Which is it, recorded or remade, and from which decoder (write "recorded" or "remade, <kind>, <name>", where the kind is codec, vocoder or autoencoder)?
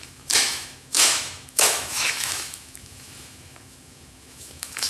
remade, autoencoder, DAC-VAE